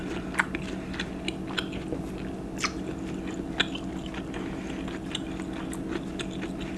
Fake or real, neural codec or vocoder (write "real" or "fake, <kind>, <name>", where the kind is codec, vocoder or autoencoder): real